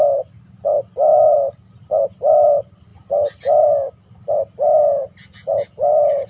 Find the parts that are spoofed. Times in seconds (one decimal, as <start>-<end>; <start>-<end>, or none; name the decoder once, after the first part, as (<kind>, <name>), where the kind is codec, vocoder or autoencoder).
none